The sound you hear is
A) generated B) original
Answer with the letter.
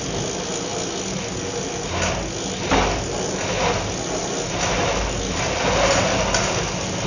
B